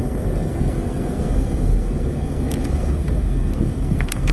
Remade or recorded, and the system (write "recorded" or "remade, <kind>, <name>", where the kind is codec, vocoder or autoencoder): remade, codec, SNAC